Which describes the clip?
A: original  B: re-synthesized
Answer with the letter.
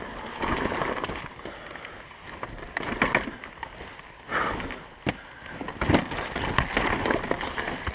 A